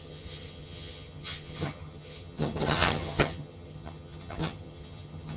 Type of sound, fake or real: fake